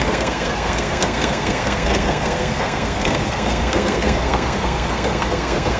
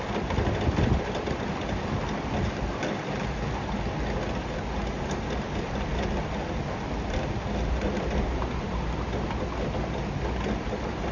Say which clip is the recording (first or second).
second